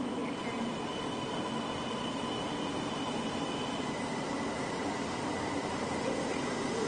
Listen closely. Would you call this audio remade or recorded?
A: recorded